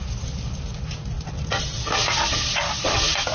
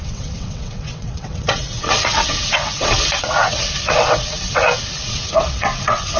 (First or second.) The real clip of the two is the first